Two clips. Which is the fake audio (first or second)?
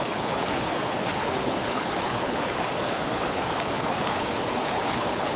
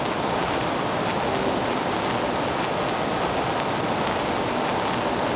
first